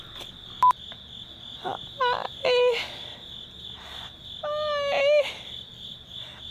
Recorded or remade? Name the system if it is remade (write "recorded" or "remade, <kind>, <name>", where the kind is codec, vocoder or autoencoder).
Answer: recorded